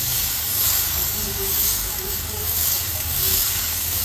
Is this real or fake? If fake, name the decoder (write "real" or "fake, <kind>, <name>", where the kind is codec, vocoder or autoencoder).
fake, codec, DAC